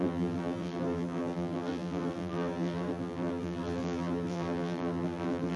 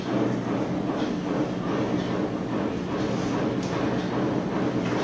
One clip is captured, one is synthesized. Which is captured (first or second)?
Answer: second